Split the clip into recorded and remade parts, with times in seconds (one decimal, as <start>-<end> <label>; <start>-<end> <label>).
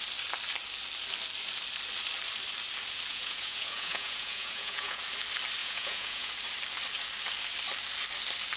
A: 0.0-3.1 recorded; 3.1-5.0 remade; 5.0-5.6 recorded; 5.6-6.3 remade; 6.3-8.6 recorded